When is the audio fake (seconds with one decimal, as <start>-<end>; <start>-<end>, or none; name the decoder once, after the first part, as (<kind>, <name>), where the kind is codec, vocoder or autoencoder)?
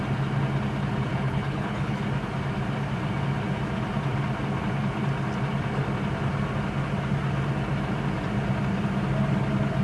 1.1-2.0 (codec, HILCodec)